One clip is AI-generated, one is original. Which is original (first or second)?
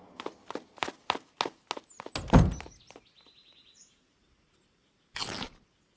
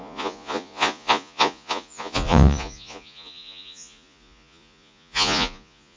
first